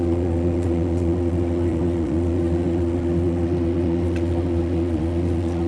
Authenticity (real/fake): fake